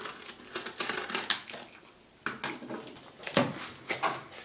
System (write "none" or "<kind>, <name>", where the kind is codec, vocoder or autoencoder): none